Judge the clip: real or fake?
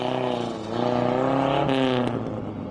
real